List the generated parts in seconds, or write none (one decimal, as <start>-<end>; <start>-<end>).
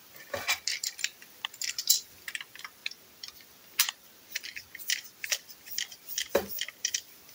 0.0-2.8; 4.8-7.3